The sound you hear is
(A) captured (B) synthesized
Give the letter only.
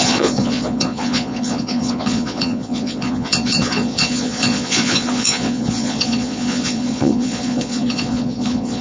B